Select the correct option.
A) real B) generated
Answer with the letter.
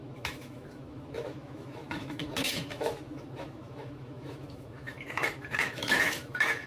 B